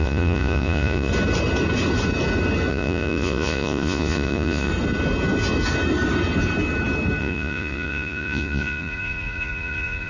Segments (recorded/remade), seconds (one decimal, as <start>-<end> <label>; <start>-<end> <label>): 0.0-1.1 remade; 1.1-2.7 recorded; 2.7-4.7 remade; 4.7-7.2 recorded; 7.2-10.1 remade